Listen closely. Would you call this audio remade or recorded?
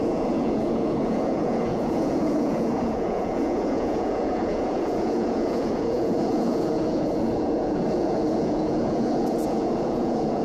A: remade